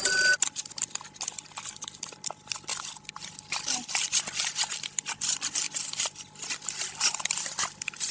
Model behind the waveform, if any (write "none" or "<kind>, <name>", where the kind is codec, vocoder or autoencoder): none